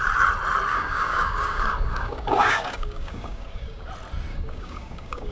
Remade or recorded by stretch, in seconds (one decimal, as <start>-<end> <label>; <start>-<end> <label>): 0.0-0.7 recorded; 0.7-3.9 remade; 3.9-4.3 recorded; 4.3-5.3 remade